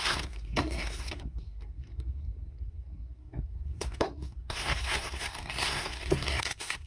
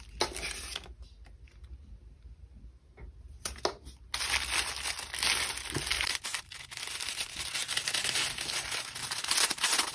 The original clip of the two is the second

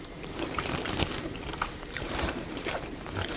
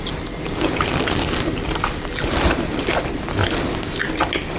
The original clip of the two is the second